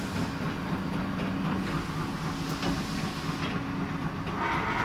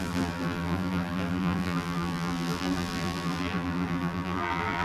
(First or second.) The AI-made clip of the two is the second